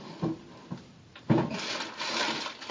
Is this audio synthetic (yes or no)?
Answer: no